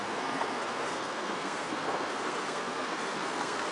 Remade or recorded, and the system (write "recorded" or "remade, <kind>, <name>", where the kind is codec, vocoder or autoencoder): remade, codec, SNAC